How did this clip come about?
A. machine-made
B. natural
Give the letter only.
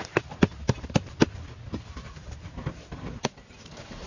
A